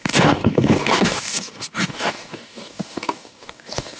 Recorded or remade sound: remade